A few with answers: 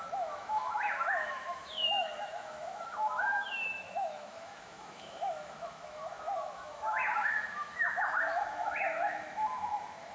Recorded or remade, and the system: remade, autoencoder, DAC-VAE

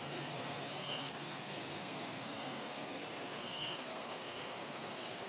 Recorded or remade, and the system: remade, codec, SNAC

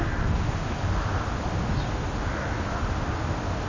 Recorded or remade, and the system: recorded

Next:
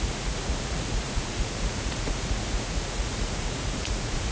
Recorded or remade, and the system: remade, vocoder, Vocos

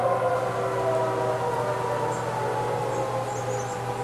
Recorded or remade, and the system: recorded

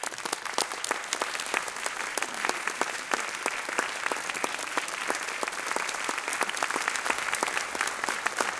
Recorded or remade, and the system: recorded